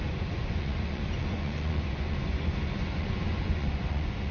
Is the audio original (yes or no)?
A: no